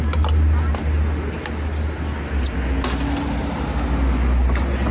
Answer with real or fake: real